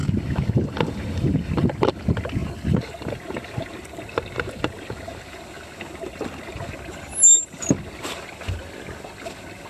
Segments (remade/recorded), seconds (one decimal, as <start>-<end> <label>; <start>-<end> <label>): 0.0-9.7 recorded